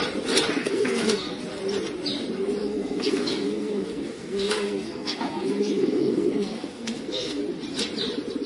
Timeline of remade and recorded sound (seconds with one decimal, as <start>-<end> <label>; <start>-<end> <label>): 0.0-0.6 recorded; 0.6-1.4 remade; 1.4-2.6 recorded; 2.6-7.4 remade; 7.4-8.5 recorded